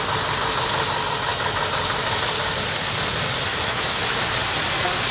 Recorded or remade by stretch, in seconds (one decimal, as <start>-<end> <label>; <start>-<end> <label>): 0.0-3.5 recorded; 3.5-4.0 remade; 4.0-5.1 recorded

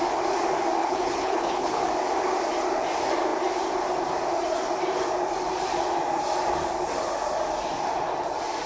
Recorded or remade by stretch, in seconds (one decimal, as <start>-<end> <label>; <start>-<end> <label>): 0.0-0.8 recorded; 0.8-1.9 remade; 1.9-8.7 recorded

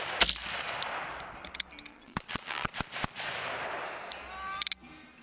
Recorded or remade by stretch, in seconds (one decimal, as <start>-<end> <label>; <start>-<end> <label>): 0.0-1.9 recorded; 1.9-2.7 remade; 2.7-5.2 recorded

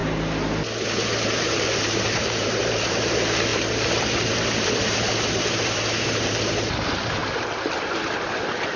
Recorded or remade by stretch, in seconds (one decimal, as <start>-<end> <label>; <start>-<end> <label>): 0.0-1.4 recorded; 1.4-7.2 remade; 7.2-8.8 recorded

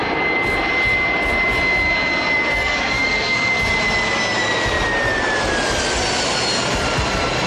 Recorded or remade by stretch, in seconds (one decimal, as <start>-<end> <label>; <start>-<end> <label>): 0.0-2.5 recorded; 2.5-3.5 remade; 3.5-7.5 recorded

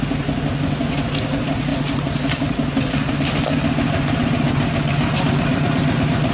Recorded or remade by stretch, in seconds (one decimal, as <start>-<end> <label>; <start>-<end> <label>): 0.0-6.3 recorded

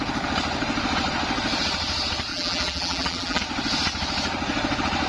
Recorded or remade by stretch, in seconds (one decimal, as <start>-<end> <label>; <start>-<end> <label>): 0.0-2.3 recorded; 2.3-3.4 remade; 3.4-5.1 recorded